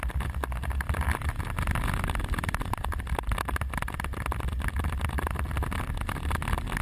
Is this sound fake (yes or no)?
no